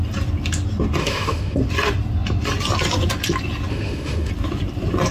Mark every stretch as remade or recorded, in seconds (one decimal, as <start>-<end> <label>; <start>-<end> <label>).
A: 0.0-1.0 recorded; 1.0-1.6 remade; 1.6-3.7 recorded; 3.7-4.3 remade; 4.3-5.1 recorded